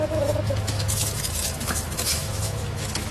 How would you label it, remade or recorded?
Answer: remade